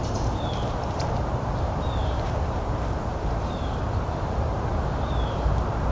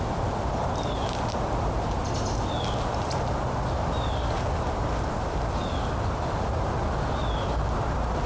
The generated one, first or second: first